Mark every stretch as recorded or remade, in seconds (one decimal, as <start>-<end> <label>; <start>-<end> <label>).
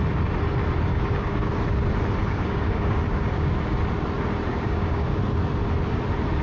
0.0-0.9 recorded; 0.9-1.5 remade; 1.5-2.2 recorded; 2.2-3.5 remade; 3.5-4.5 recorded; 4.5-5.2 remade; 5.2-6.4 recorded